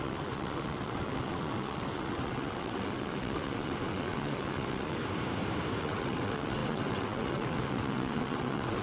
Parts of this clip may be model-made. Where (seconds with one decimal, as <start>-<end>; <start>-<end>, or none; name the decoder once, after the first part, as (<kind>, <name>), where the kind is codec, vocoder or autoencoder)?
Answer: 0.0-5.0 (vocoder, WaveNeXt); 5.8-8.8